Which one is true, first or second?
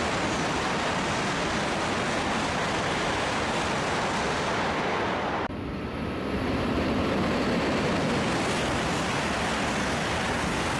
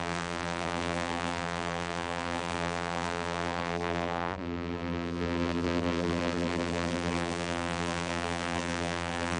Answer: first